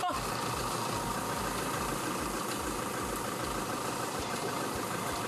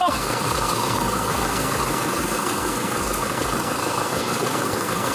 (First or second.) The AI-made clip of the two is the second